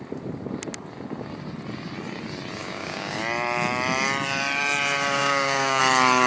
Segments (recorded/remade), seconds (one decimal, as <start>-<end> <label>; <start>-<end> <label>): 0.0-2.6 recorded; 2.6-3.2 remade; 3.2-5.2 recorded; 5.2-5.8 remade; 5.8-6.3 recorded

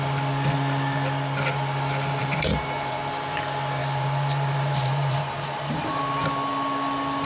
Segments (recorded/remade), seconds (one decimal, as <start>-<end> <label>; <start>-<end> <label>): 0.0-2.2 recorded; 2.2-3.0 remade; 3.0-3.8 recorded; 3.8-6.0 remade; 6.0-7.2 recorded

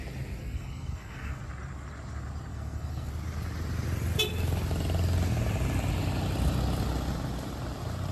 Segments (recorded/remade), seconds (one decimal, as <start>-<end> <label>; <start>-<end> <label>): 0.0-0.4 recorded; 0.4-1.4 remade; 1.4-2.5 recorded; 2.5-3.1 remade; 3.1-8.1 recorded

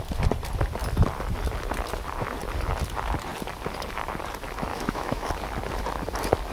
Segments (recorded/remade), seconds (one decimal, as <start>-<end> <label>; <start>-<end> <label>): 0.0-4.7 recorded; 4.7-5.3 remade; 5.3-6.5 recorded

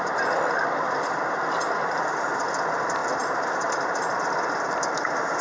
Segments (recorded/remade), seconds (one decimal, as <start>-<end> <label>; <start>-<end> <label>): 0.0-5.4 recorded

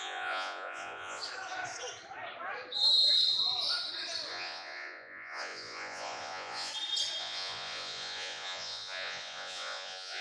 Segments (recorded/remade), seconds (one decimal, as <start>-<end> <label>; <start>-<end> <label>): 0.0-1.2 remade; 1.2-4.3 recorded; 4.3-6.7 remade; 6.7-7.2 recorded; 7.2-10.2 remade

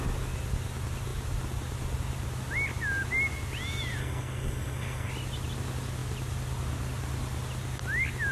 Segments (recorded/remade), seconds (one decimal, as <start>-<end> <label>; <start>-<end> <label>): 0.0-4.0 recorded; 4.0-5.1 remade; 5.1-8.3 recorded

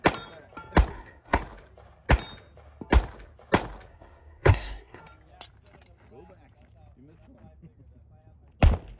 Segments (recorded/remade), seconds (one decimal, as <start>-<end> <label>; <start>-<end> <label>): 0.0-0.9 recorded; 0.9-1.4 remade; 1.4-3.9 recorded; 3.9-5.0 remade; 5.0-9.0 recorded